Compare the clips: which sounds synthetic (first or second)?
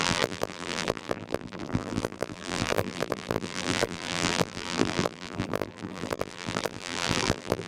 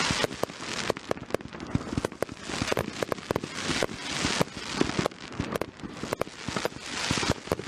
first